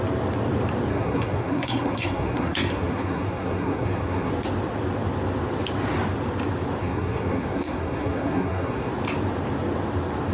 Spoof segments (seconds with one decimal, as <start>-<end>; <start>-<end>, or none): 0.9-4.3; 6.8-8.9